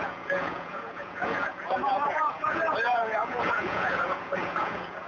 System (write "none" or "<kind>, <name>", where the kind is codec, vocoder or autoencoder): vocoder, Vocos